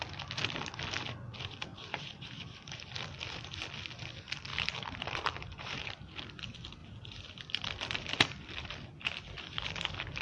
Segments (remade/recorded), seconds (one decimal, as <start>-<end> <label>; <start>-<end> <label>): 0.0-1.7 recorded; 1.7-2.8 remade; 2.8-4.5 recorded; 4.5-6.2 remade; 6.2-6.8 recorded; 6.8-7.4 remade; 7.4-10.2 recorded